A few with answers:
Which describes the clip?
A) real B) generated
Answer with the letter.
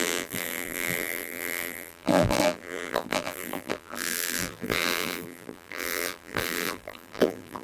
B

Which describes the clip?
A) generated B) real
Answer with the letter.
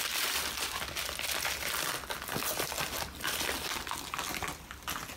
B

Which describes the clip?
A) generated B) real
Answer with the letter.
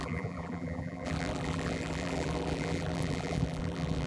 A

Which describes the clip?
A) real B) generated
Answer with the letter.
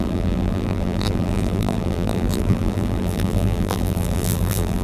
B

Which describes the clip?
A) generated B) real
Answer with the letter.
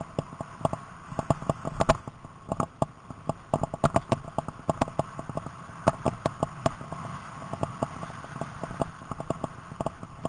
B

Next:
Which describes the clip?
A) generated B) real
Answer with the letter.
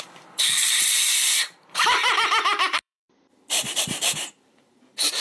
A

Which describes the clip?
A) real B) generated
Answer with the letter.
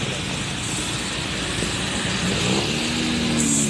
A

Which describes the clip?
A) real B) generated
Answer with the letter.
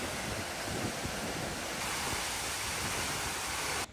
A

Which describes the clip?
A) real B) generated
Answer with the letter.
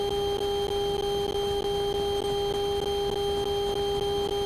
A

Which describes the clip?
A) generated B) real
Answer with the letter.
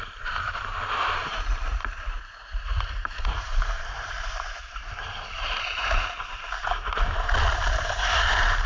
A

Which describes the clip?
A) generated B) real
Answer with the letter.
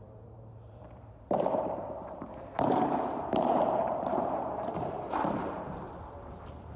A